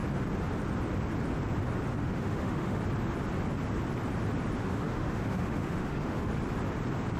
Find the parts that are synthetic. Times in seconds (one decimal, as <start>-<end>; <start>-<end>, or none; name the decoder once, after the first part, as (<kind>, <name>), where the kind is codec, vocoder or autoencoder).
2.0-2.8 (autoencoder, DAC-VAE); 4.6-6.3